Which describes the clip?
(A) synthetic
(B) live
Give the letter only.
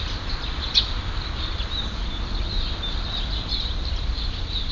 B